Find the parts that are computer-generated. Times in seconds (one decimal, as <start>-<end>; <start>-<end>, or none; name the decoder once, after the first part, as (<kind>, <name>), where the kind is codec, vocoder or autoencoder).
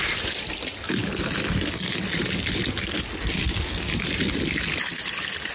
none